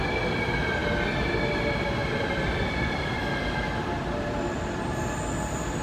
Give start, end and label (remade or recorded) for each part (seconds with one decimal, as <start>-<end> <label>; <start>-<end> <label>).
0.0-2.0 recorded; 2.0-5.3 remade; 5.3-5.8 recorded